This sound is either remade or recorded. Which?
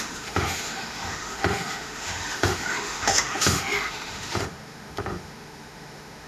remade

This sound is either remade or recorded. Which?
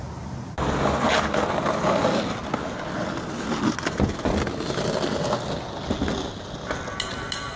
recorded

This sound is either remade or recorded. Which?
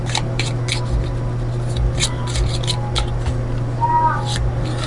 recorded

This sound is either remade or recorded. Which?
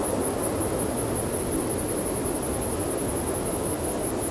recorded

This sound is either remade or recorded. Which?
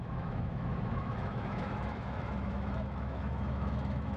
remade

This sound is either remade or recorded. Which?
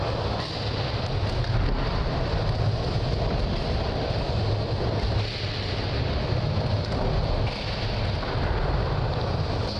recorded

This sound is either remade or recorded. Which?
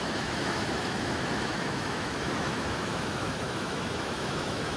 remade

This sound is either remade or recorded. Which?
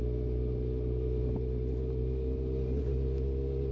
recorded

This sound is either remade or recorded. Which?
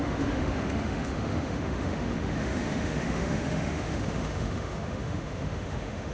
remade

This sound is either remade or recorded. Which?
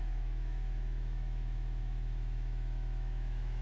remade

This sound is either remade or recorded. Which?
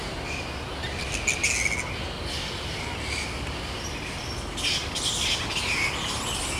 recorded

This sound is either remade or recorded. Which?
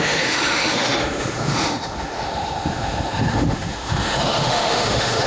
remade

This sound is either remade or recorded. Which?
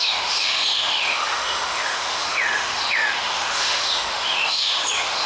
remade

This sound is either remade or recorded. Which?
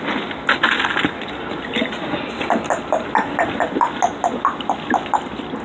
recorded